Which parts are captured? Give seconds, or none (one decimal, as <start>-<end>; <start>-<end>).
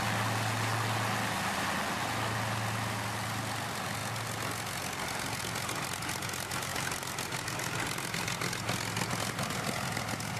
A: 0.0-10.4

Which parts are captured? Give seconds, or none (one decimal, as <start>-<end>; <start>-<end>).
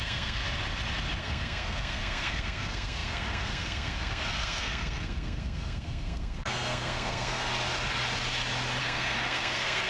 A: 0.4-1.2; 7.5-8.8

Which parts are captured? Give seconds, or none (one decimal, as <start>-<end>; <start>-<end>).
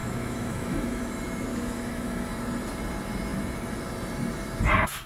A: 1.0-1.5; 2.3-5.1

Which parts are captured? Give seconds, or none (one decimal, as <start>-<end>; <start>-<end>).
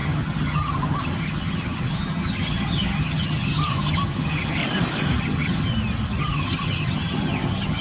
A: 4.6-5.2; 5.7-6.2